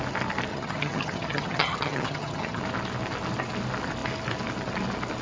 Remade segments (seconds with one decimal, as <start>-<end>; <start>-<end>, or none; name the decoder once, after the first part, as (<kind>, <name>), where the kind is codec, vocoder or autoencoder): 0.5-2.6 (vocoder, HiFi-GAN)